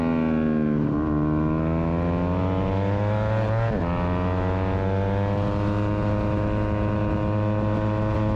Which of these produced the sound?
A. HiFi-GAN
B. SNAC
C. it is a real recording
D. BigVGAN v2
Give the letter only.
C